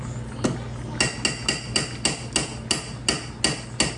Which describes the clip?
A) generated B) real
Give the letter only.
B